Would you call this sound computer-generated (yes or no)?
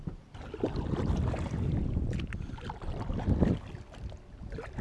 no